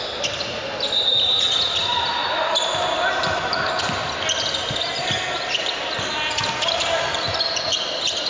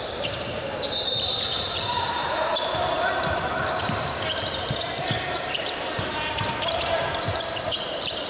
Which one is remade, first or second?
second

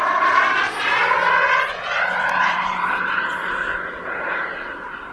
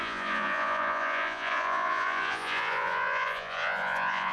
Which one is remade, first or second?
second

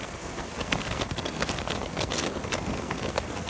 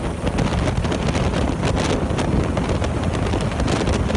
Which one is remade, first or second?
first